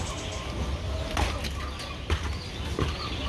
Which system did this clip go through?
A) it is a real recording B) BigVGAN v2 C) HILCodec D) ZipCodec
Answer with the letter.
A